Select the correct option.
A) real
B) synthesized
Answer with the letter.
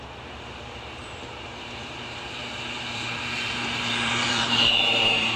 B